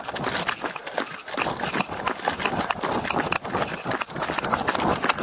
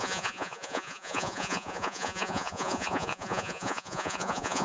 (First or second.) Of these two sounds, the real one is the first